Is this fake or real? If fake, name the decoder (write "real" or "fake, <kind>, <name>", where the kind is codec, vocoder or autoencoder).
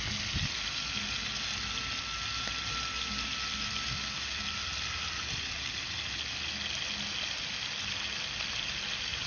real